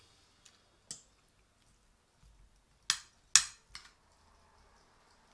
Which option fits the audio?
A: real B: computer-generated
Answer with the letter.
A